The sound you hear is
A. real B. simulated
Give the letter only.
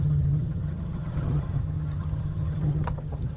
B